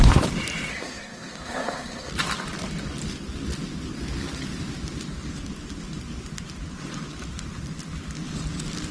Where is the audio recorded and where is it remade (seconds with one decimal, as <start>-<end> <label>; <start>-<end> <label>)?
0.0-0.7 recorded; 0.7-2.1 remade; 2.1-8.9 recorded